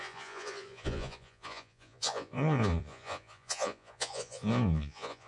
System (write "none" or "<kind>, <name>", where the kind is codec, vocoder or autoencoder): vocoder, Vocos